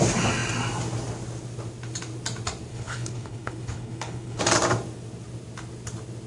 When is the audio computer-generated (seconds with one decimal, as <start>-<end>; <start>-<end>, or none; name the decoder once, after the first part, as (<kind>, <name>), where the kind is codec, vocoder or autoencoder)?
2.7-4.4 (codec, HILCodec)